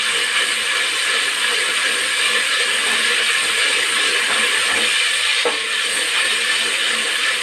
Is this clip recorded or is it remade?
recorded